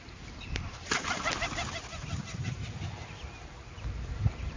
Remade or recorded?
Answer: recorded